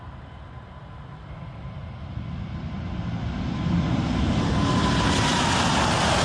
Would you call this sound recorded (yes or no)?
yes